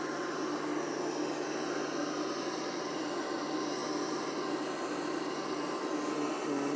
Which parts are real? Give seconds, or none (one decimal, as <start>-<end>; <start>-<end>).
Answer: 0.0-6.8

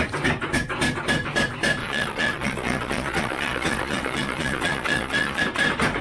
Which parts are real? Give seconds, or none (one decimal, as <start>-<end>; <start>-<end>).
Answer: 0.0-1.8; 5.4-6.0

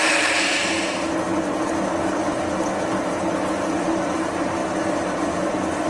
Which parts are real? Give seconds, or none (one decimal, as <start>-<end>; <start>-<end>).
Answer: 0.0-5.9

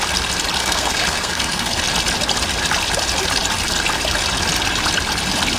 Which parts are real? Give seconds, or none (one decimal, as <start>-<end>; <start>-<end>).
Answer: 0.0-0.6; 1.8-5.6